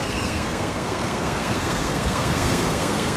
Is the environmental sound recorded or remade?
remade